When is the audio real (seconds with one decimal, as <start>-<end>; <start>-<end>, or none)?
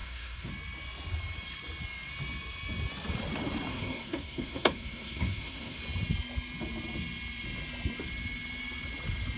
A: 0.5-3.7; 5.8-9.4